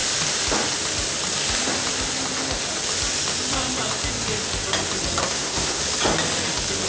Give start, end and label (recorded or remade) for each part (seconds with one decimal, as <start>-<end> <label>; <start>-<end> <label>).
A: 0.0-5.2 recorded; 5.2-5.8 remade; 5.8-6.9 recorded

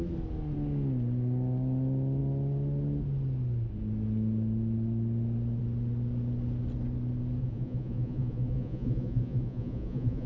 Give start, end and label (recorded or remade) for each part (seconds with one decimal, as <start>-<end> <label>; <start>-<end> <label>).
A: 0.0-7.4 recorded; 7.4-10.3 remade